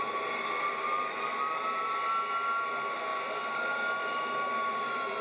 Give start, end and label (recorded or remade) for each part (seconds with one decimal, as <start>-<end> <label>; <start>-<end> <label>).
0.0-5.2 recorded